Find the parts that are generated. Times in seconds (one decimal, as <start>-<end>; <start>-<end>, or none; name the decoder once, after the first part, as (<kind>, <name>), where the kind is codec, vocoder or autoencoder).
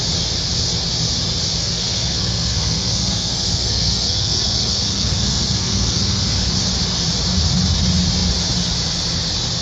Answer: 1.6-6.5 (codec, SNAC)